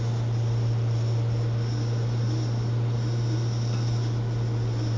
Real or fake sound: real